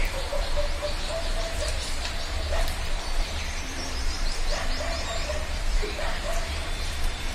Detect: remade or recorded remade